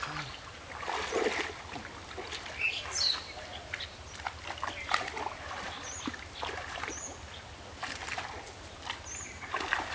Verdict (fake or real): real